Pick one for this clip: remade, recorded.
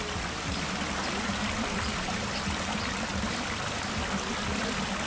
recorded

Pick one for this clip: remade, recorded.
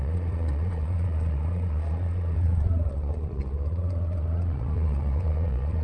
remade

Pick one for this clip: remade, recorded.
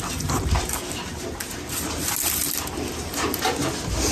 recorded